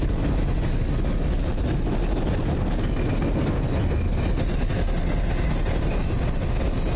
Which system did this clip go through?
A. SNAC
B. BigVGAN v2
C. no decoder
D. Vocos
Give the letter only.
C